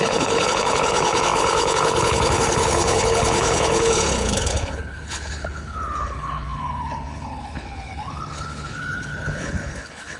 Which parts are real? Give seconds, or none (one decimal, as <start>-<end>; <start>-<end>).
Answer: none

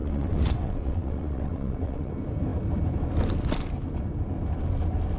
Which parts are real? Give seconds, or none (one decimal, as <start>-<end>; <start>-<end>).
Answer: 2.1-5.2

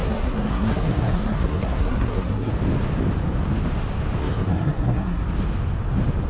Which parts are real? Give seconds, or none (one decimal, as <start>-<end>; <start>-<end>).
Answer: 2.5-4.2; 5.2-6.3

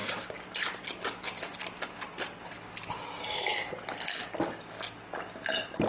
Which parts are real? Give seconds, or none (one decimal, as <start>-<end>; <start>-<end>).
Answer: 0.0-5.9

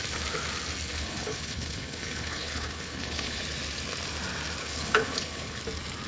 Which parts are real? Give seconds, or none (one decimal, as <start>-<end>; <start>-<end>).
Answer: 0.0-0.9; 3.4-4.6; 5.6-6.1

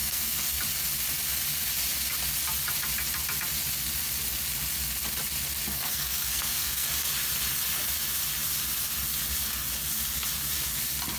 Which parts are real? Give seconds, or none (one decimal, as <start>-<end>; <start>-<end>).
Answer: 0.6-5.7; 6.9-11.2

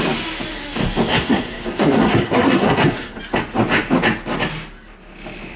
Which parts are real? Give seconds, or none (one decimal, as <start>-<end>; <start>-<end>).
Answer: 0.0-1.1; 3.2-5.6